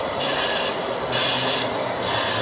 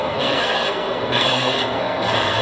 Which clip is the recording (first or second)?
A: first